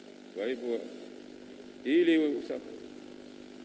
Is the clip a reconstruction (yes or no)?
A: no